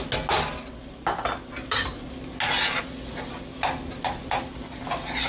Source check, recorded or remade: recorded